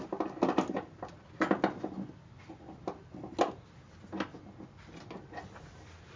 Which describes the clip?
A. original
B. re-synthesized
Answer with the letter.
A